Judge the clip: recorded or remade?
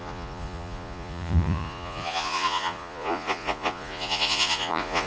remade